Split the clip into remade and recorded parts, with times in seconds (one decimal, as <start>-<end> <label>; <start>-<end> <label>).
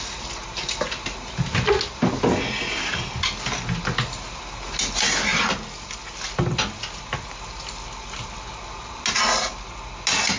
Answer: 0.0-10.4 recorded